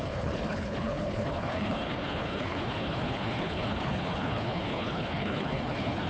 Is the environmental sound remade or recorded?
remade